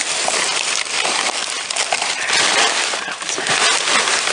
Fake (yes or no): no